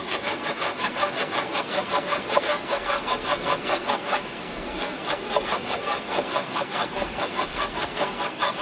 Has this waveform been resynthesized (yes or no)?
yes